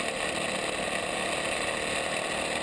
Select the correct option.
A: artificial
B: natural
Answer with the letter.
B